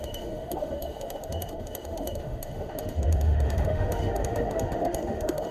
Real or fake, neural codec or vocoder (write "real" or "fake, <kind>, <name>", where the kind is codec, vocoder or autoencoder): fake, autoencoder, DAC-VAE